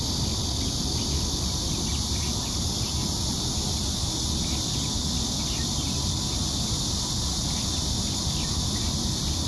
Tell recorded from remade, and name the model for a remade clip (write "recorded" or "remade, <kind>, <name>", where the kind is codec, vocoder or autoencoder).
recorded